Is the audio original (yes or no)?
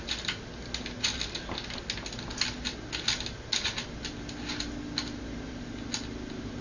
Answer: yes